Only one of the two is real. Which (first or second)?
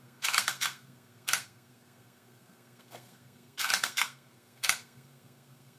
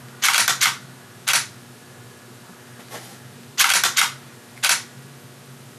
second